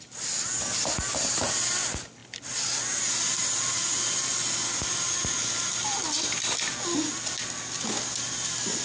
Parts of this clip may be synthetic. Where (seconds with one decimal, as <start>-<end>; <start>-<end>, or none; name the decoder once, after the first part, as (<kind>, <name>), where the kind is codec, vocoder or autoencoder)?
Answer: none